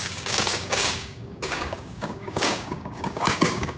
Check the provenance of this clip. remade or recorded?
remade